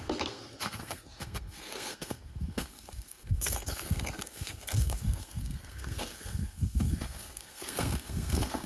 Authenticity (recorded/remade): remade